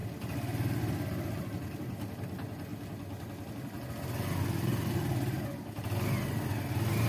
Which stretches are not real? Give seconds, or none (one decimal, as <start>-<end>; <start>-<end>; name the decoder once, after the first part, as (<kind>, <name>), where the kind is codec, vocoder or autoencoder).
none